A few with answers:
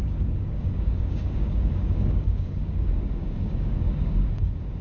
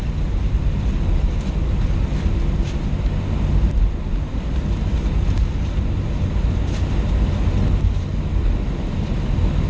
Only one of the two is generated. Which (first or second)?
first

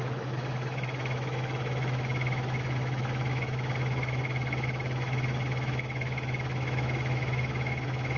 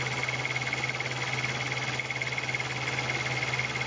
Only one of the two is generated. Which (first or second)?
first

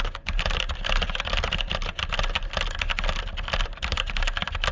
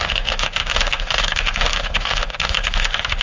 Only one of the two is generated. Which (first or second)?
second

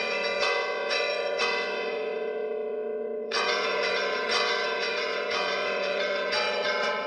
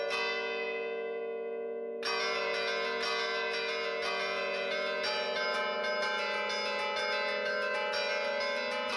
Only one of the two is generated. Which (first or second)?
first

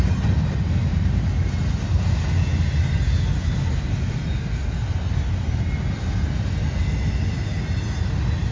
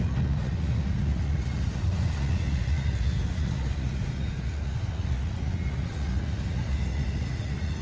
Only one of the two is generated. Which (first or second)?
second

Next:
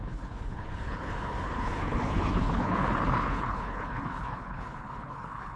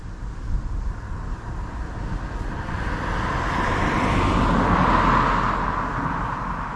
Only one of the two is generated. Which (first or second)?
first